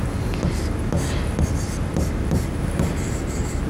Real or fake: real